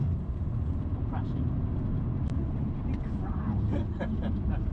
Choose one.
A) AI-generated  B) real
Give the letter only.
A